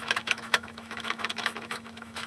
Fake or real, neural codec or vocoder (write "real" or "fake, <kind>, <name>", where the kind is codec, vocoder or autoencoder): fake, autoencoder, DAC-VAE